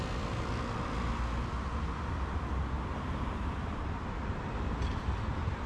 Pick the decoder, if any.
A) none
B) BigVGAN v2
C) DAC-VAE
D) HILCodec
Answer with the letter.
A